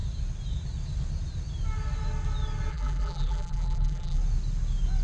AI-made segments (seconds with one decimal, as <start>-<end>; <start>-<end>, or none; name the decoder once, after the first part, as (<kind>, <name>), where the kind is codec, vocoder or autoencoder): 2.7-4.2 (vocoder, BigVGAN v2)